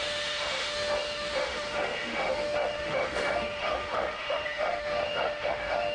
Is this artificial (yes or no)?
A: yes